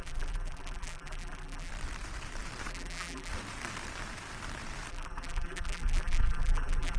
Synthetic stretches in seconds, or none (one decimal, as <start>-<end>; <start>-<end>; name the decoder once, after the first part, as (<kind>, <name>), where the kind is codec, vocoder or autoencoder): 0.0-1.7 (vocoder, BigVGAN v2); 2.7-3.3; 4.9-7.0